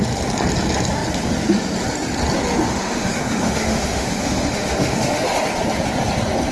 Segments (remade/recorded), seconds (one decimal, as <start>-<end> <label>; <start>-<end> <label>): 0.0-2.6 recorded; 2.6-5.4 remade; 5.4-6.5 recorded